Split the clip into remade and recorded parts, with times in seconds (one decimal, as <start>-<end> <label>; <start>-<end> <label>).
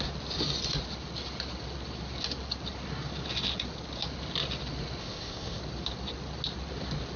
0.0-5.0 recorded; 5.0-5.6 remade; 5.6-7.2 recorded